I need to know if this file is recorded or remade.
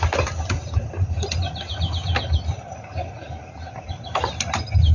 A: recorded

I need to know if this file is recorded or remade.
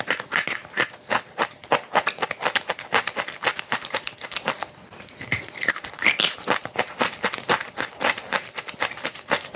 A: recorded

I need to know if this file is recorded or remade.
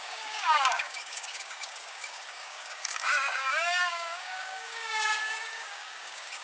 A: remade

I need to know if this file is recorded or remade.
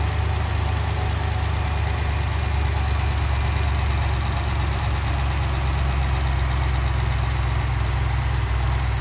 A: recorded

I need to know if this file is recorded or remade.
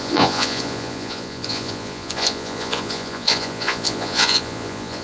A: remade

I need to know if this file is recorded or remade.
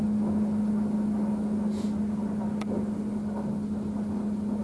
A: recorded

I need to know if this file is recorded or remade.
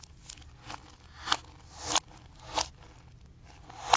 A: recorded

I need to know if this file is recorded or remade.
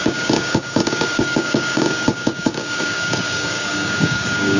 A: remade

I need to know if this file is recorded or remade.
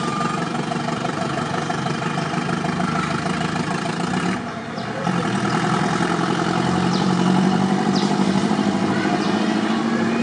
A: remade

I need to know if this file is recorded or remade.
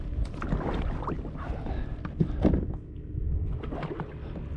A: recorded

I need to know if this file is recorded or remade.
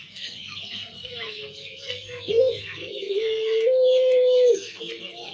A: remade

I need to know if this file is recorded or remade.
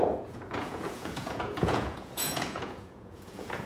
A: remade